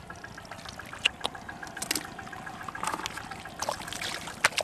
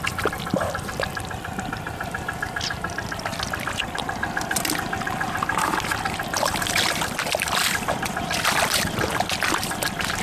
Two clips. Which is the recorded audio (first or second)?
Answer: first